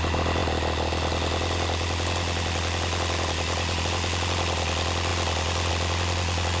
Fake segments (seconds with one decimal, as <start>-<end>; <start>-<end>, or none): none